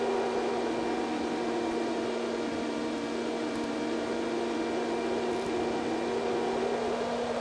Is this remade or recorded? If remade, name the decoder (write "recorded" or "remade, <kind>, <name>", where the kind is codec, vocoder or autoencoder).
recorded